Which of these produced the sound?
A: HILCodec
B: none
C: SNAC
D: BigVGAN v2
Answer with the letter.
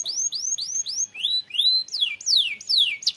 B